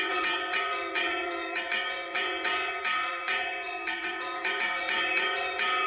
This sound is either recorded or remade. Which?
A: remade